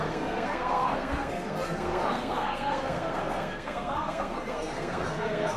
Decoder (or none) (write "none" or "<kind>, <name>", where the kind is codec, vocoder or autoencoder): codec, SNAC